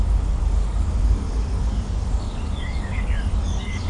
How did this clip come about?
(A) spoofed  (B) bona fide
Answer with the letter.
A